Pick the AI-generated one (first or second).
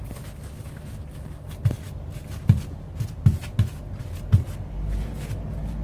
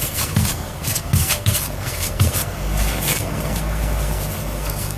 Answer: second